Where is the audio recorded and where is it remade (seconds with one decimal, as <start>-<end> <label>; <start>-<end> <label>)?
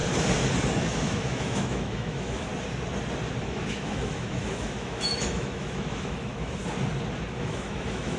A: 0.0-0.7 recorded; 0.7-2.5 remade; 2.5-3.4 recorded; 3.4-6.6 remade; 6.6-7.3 recorded; 7.3-8.2 remade